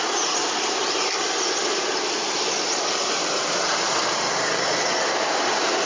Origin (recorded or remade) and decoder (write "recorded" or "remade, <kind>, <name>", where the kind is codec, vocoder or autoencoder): recorded